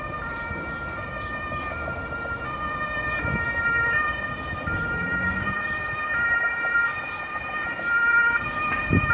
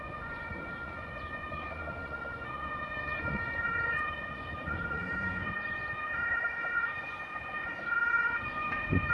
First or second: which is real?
first